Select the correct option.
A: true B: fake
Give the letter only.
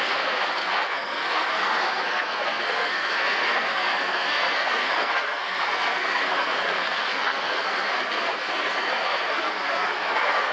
B